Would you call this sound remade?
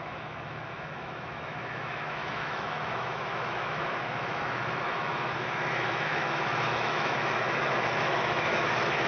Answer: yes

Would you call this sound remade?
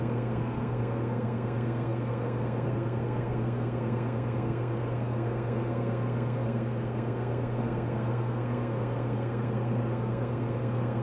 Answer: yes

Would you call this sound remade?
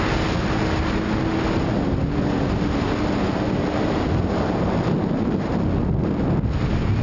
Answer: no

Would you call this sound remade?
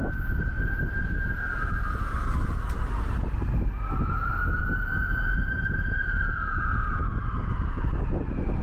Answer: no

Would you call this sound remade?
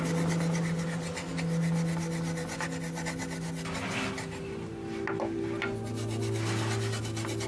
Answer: no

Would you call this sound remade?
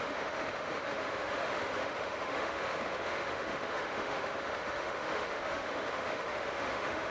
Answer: yes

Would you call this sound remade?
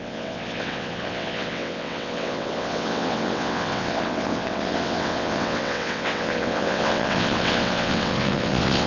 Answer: yes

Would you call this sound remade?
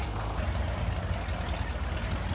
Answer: no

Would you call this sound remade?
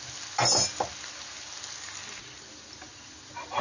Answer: no